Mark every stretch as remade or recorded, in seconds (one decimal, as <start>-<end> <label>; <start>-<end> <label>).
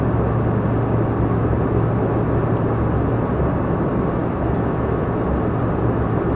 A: 0.0-6.3 recorded